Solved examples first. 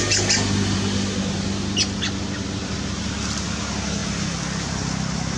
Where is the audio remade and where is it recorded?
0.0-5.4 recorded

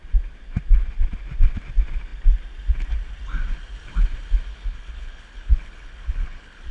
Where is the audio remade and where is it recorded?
0.0-4.5 recorded; 4.5-6.7 remade

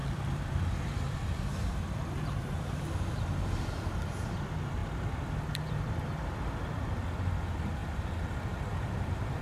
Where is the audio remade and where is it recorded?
0.0-9.4 remade